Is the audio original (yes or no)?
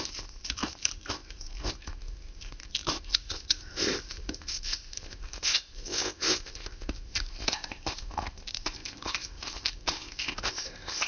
no